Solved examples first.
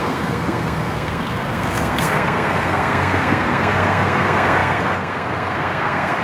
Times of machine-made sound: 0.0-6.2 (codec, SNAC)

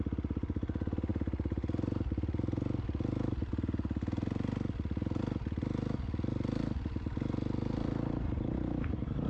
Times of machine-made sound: none

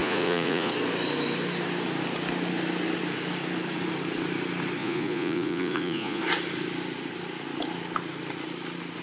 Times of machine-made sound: 0.0-0.7 (vocoder, Vocos); 4.8-6.2

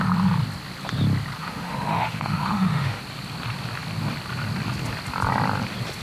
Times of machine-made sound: 1.4-3.0 (autoencoder, DAC-VAE)

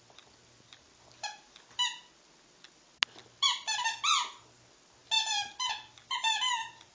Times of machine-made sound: none

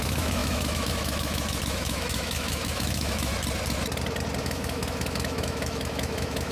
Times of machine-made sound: 0.0-3.3 (autoencoder, DAC-VAE); 4.4-6.5